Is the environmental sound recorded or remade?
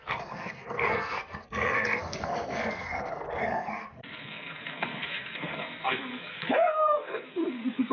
remade